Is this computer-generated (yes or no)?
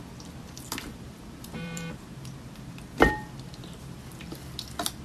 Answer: yes